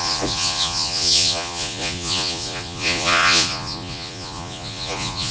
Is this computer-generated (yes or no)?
yes